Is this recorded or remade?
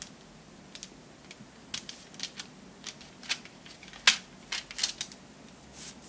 recorded